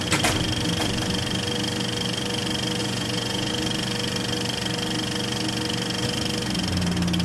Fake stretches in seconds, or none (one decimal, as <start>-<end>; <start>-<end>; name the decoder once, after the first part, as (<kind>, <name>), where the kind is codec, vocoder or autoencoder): 2.8-3.5 (vocoder, Vocos)